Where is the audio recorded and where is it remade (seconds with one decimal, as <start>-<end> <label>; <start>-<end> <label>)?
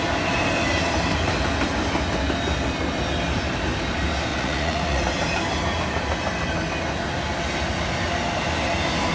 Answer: 0.0-4.3 recorded; 4.3-5.0 remade; 5.0-9.1 recorded